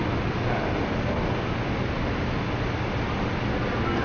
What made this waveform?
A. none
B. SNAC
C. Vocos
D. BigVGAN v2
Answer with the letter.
A